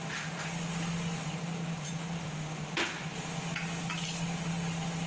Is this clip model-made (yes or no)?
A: no